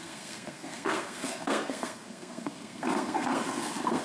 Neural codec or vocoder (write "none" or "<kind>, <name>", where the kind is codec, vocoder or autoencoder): codec, SNAC